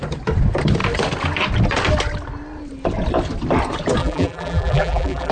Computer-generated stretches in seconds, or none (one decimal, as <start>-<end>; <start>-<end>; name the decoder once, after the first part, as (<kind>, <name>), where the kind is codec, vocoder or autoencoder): 4.0-5.3 (vocoder, BigVGAN v2)